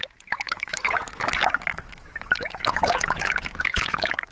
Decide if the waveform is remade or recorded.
remade